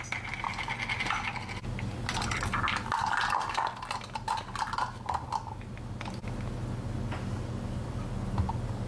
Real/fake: real